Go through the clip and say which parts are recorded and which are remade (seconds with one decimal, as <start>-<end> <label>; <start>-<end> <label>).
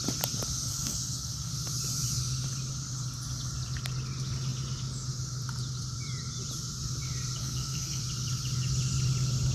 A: 0.0-0.7 recorded; 0.7-1.5 remade; 1.5-7.4 recorded; 7.4-8.0 remade; 8.0-9.5 recorded